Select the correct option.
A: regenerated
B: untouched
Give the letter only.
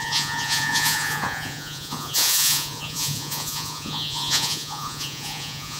A